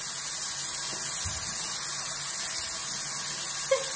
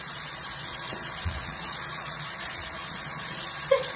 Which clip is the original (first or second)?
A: first